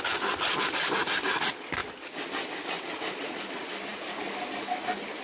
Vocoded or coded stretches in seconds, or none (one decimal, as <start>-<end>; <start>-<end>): none